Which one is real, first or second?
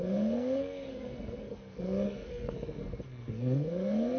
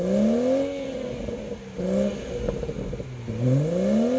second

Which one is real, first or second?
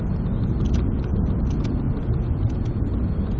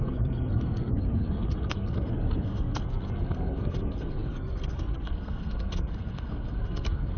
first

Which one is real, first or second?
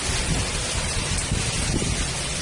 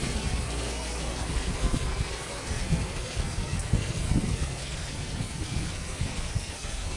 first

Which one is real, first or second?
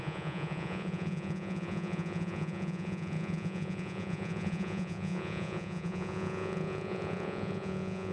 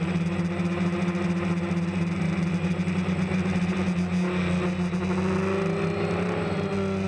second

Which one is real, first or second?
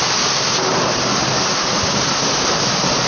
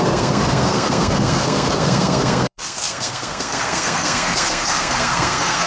first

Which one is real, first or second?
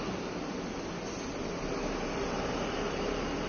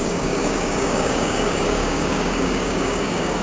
first